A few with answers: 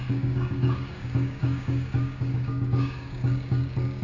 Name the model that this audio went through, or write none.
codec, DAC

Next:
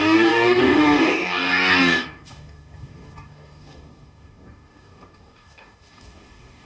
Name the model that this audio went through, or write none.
codec, DAC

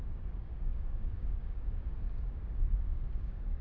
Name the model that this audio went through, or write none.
codec, DAC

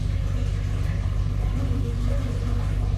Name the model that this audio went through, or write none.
none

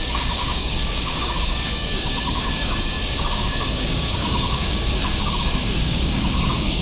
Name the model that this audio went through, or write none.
codec, DAC